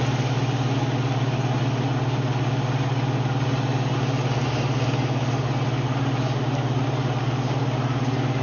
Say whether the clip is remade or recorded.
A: recorded